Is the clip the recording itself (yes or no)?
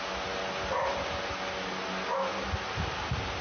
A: yes